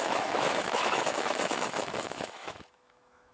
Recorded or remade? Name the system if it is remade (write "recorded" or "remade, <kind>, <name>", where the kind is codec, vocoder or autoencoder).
remade, autoencoder, DAC-VAE